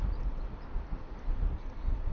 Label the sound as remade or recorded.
recorded